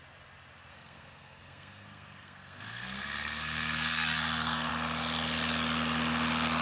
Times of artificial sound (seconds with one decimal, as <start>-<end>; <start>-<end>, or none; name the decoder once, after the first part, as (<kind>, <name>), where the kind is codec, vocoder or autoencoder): 0.7-4.7 (codec, SNAC)